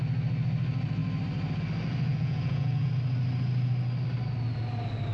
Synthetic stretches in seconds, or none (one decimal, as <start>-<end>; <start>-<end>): 2.1-2.9